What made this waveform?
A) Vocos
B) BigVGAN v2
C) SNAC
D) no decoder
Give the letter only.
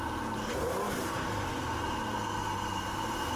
D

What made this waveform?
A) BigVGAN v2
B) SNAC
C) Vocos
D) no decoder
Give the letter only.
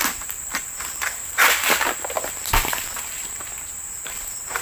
A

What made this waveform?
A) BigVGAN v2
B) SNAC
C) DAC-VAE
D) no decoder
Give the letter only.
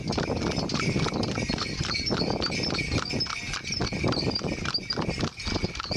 D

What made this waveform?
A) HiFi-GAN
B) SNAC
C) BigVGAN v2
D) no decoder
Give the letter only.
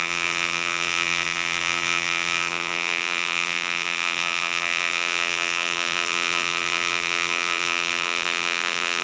C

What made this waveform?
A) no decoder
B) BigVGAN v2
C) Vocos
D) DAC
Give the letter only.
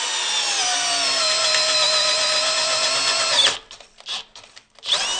A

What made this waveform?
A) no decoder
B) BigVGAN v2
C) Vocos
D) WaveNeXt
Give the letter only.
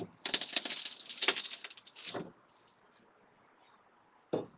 A